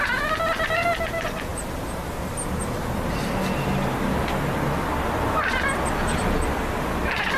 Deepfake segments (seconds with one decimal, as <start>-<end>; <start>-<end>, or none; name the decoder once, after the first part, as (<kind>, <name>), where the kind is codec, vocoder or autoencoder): 1.5-3.3 (vocoder, BigVGAN v2)